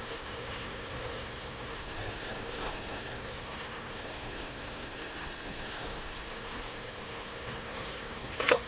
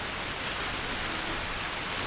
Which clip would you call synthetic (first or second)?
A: first